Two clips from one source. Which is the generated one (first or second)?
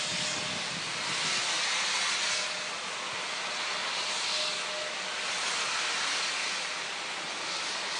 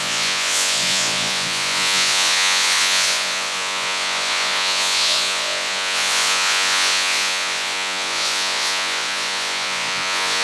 second